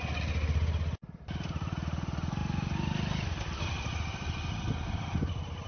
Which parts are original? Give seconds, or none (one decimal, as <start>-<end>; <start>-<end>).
0.0-5.7